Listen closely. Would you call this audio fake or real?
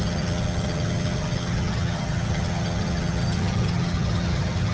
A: fake